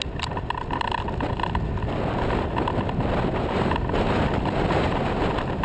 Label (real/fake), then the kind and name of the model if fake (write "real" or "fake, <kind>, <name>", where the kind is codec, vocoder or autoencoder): real